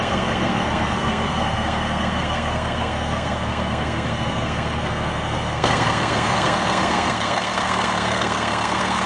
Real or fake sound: fake